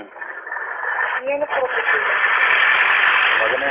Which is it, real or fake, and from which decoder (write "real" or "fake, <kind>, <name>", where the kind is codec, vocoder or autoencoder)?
real